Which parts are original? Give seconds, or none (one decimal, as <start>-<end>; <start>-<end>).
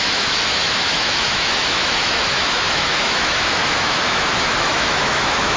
none